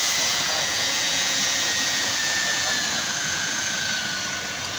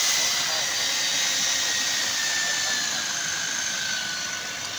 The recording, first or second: second